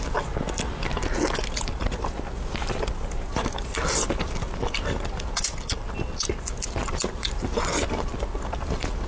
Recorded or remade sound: recorded